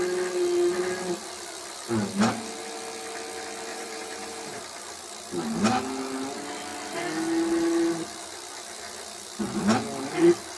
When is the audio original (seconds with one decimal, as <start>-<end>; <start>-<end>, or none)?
0.0-3.7; 4.6-10.6